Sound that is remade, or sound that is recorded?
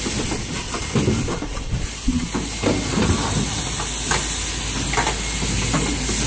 recorded